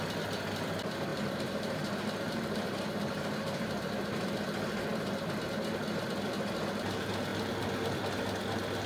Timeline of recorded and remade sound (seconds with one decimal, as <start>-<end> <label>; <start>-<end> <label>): 0.0-1.1 recorded; 1.1-4.3 remade; 4.3-8.9 recorded